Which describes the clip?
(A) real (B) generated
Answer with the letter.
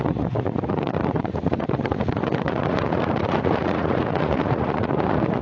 B